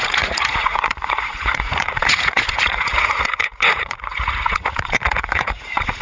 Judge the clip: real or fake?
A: fake